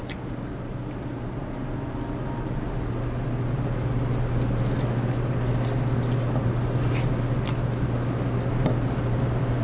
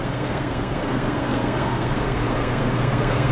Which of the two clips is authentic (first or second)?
first